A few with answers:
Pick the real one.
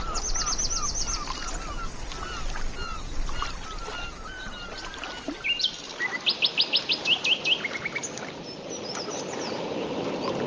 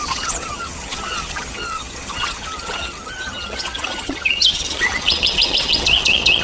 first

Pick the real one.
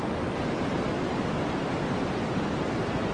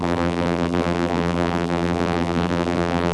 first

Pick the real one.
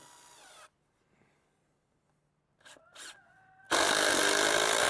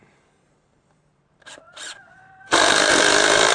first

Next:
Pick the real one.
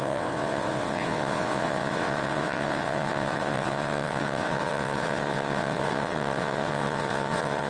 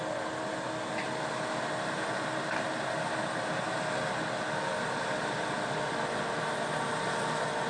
second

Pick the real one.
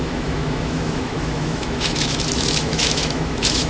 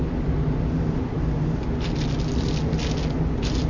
second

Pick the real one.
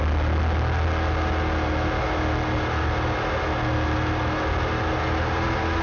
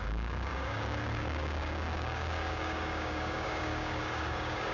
first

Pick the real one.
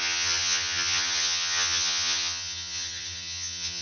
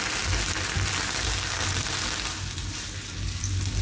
second